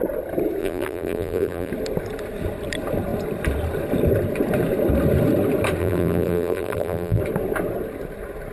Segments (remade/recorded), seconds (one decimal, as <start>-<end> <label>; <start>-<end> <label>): 0.0-0.6 recorded; 0.6-1.7 remade; 1.7-5.8 recorded; 5.8-7.2 remade; 7.2-8.5 recorded